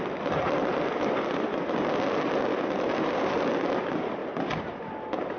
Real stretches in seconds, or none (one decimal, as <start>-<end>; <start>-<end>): 0.0-2.5; 3.5-5.4

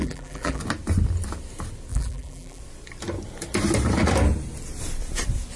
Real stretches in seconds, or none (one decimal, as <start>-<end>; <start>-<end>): 0.6-1.9; 2.6-5.6